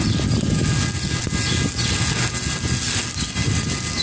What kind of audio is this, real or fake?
real